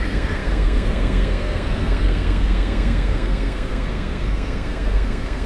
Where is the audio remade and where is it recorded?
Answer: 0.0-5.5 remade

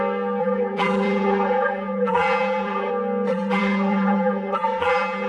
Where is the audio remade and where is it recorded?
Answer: 0.0-0.4 recorded; 0.4-2.9 remade; 2.9-3.3 recorded; 3.3-5.3 remade

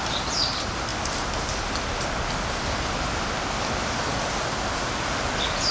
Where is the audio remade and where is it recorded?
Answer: 0.0-5.7 recorded

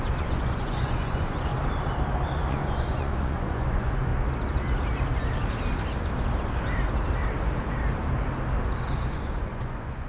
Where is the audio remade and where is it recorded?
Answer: 0.0-1.5 remade; 1.5-2.5 recorded; 2.5-4.1 remade; 4.1-8.8 recorded; 8.8-10.1 remade

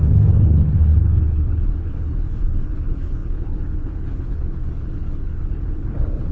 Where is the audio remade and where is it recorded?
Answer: 0.0-6.3 remade